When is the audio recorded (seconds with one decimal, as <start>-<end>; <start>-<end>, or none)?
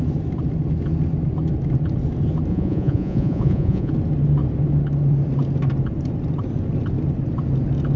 0.0-2.5; 3.9-8.0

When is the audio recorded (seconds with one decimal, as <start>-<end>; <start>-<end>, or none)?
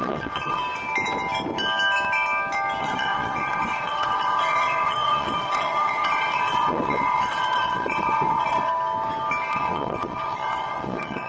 0.6-2.8; 8.7-9.5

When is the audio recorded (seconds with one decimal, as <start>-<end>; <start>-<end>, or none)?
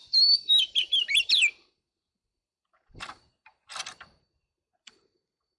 3.7-4.2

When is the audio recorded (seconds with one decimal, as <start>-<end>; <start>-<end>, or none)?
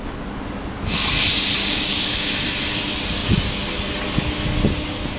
0.0-1.6; 2.3-5.2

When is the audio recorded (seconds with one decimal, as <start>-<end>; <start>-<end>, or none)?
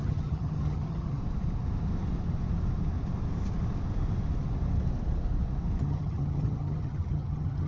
1.2-5.8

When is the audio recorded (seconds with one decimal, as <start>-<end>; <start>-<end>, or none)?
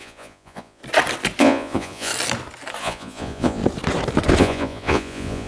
0.8-1.4; 2.1-2.8; 3.6-4.4